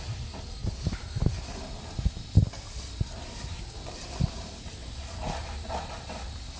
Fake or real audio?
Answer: real